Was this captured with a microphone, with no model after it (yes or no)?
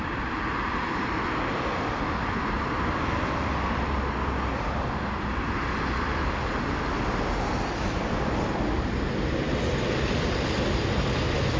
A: yes